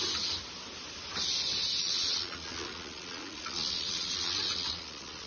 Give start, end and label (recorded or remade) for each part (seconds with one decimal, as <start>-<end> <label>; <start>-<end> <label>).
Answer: 0.0-1.8 recorded; 1.8-5.3 remade